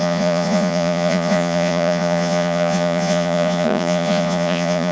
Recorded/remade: remade